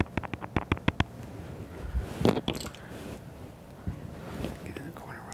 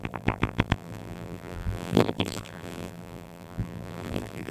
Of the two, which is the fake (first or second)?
second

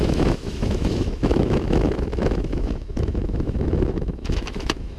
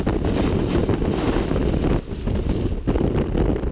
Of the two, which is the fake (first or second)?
first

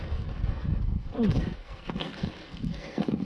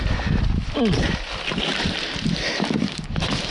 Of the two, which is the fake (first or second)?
first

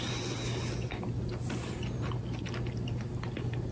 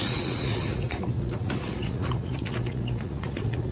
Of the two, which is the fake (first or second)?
second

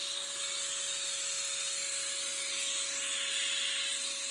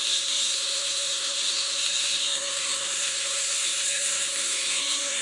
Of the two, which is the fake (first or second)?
second